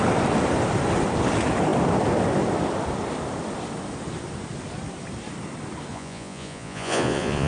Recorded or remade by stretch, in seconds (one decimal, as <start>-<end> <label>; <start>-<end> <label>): 0.0-5.9 recorded; 5.9-7.5 remade